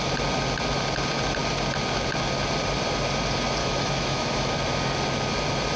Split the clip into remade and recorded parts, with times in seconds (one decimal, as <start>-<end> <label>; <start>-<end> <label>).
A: 0.0-3.6 recorded; 3.6-4.5 remade; 4.5-5.8 recorded